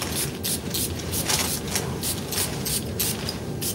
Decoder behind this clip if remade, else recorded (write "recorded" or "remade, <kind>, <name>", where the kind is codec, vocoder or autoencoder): recorded